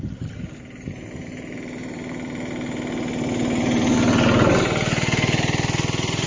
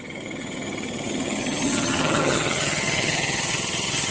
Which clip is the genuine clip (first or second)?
first